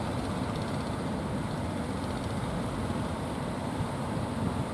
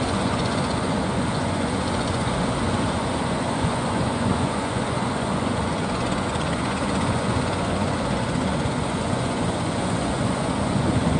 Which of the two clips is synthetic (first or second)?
second